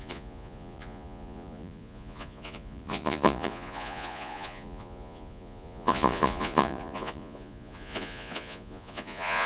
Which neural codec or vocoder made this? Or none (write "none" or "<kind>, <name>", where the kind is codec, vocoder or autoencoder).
vocoder, Vocos